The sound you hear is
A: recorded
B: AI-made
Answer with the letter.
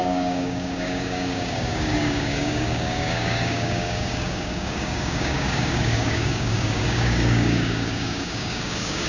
B